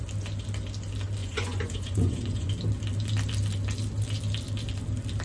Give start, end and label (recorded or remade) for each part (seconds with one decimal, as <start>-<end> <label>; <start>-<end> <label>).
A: 0.0-1.2 recorded; 1.2-2.5 remade; 2.5-5.2 recorded